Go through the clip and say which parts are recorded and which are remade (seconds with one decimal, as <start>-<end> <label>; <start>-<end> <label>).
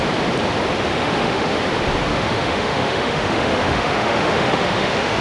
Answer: 0.0-0.9 recorded; 0.9-1.6 remade; 1.6-2.1 recorded; 2.1-5.2 remade